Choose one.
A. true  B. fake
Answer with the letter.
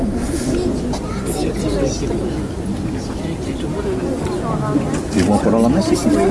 A